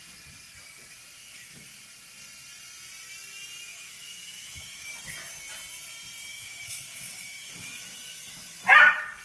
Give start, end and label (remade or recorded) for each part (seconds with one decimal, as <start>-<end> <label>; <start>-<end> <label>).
0.0-1.2 recorded; 1.2-1.8 remade; 1.8-3.7 recorded; 3.7-4.9 remade; 4.9-6.3 recorded; 6.3-8.6 remade; 8.6-9.2 recorded

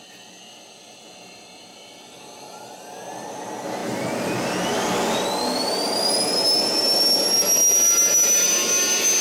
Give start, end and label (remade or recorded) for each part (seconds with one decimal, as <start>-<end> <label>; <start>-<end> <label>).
0.0-9.2 recorded

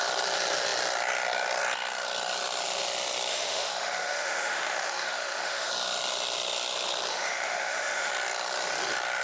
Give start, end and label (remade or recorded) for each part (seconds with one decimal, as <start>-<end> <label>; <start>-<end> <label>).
0.0-3.3 recorded; 3.3-5.7 remade; 5.7-7.1 recorded; 7.1-8.1 remade; 8.1-9.2 recorded

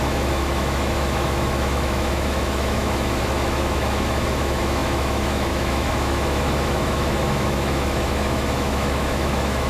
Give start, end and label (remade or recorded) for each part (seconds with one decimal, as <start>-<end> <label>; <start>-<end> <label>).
0.0-9.7 remade

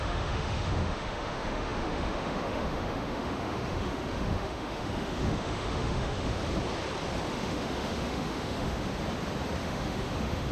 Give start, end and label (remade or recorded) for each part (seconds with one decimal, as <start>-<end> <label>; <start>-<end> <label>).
0.0-6.4 remade; 6.4-7.3 recorded; 7.3-8.9 remade; 8.9-9.6 recorded; 9.6-10.5 remade